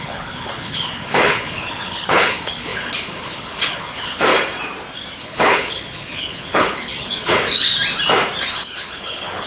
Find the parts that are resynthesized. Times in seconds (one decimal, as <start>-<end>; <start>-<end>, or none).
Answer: 0.0-4.3; 5.2-7.7; 8.5-9.5